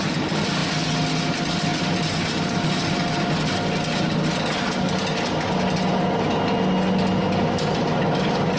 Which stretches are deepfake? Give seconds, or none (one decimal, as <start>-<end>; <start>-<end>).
none